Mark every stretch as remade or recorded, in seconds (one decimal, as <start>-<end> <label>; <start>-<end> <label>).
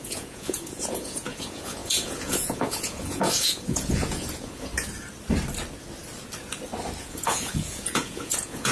0.0-4.7 remade; 4.7-7.0 recorded; 7.0-8.7 remade